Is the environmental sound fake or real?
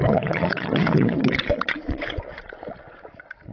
fake